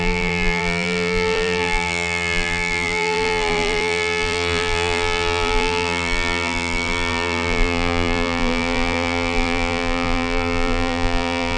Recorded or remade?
remade